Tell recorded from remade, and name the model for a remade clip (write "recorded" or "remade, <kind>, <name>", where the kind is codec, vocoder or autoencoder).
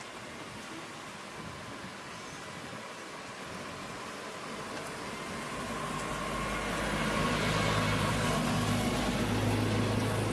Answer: recorded